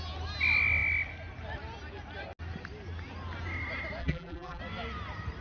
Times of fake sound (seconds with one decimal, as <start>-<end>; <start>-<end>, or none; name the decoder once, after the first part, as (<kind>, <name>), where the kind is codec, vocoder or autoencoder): 4.0-4.6 (vocoder, BigVGAN v2)